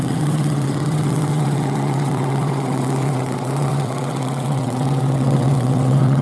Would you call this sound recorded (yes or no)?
no